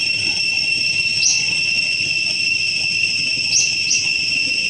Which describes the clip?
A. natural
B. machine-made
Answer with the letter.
A